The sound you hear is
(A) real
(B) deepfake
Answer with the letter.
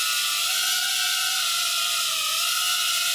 A